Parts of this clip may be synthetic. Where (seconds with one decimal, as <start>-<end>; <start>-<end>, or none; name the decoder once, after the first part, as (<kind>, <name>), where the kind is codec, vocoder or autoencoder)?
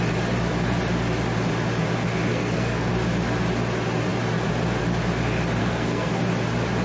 2.3-2.9 (codec, SNAC); 5.6-6.2